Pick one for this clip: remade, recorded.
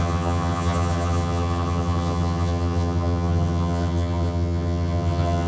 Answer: remade